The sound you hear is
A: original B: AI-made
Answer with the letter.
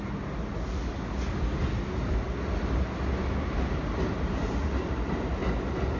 A